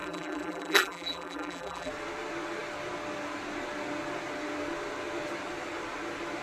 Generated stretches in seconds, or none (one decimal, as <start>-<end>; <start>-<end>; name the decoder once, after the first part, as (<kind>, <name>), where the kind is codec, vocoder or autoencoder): 0.0-1.9 (vocoder, BigVGAN v2)